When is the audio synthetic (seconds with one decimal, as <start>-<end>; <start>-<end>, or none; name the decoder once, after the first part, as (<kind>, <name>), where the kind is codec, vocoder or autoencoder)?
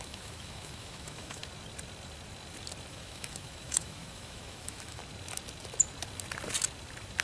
0.0-1.4 (autoencoder, DAC-VAE); 2.9-5.0